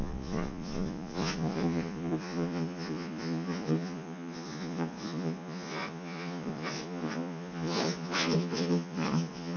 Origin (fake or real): fake